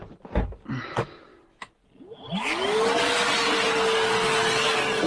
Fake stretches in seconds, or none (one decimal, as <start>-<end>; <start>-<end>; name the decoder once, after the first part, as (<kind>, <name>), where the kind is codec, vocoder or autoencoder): none